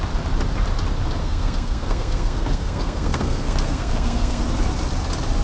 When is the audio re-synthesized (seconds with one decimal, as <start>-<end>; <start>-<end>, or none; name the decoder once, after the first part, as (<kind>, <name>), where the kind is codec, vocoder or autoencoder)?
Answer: 1.2-4.4 (codec, SNAC)